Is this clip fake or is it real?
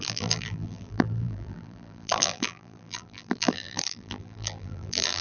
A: fake